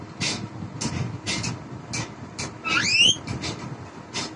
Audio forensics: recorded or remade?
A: recorded